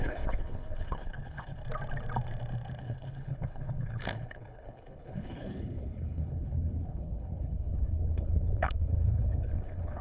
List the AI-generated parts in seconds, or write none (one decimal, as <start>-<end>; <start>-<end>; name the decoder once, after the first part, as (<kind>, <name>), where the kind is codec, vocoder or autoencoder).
0.0-1.6 (codec, HILCodec); 2.8-10.0